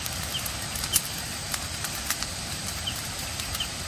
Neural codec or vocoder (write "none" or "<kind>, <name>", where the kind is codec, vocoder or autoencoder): vocoder, BigVGAN v2